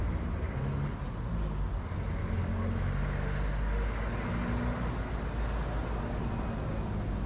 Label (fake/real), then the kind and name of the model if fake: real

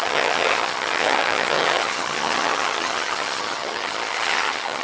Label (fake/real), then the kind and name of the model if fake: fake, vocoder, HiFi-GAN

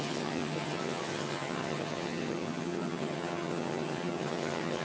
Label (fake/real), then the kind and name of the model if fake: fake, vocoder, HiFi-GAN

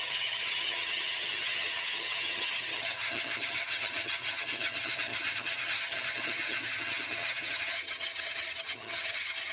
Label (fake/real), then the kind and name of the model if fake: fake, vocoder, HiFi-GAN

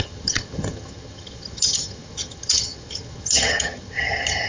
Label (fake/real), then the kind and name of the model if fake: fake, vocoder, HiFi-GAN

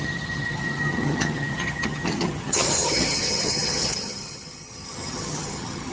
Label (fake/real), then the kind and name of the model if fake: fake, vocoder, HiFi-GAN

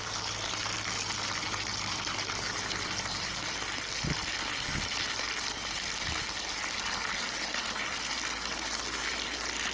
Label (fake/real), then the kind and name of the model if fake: real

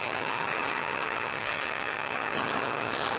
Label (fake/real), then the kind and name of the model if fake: fake, vocoder, HiFi-GAN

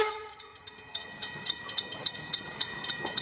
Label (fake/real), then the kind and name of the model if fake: fake, vocoder, HiFi-GAN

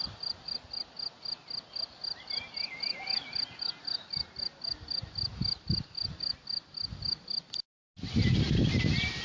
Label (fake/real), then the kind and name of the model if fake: real